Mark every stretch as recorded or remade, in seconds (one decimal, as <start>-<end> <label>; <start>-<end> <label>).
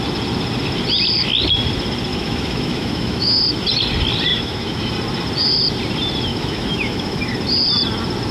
0.0-2.1 recorded; 2.1-3.4 remade; 3.4-4.3 recorded; 4.3-4.9 remade; 4.9-6.3 recorded; 6.3-7.2 remade; 7.2-8.3 recorded